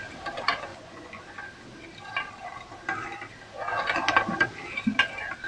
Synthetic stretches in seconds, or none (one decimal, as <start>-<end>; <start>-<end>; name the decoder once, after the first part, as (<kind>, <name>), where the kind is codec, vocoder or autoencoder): 0.7-1.2 (vocoder, Vocos)